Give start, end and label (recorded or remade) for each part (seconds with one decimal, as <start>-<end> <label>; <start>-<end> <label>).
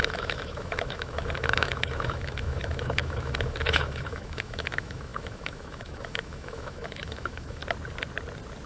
0.0-7.6 remade; 7.6-8.7 recorded